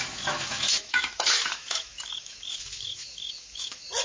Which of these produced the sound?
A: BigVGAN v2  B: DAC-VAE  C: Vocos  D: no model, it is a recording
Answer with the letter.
B